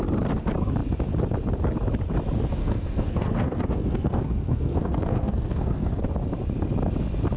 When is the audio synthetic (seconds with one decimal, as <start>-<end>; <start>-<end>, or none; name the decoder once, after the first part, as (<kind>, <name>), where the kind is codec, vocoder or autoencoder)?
2.6-6.0 (codec, SNAC)

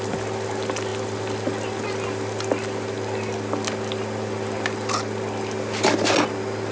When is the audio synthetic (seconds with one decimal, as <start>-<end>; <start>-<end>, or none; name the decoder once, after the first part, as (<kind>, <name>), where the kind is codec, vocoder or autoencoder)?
none